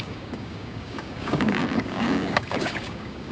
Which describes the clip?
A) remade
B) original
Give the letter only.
A